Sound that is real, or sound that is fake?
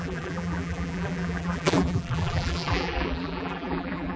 fake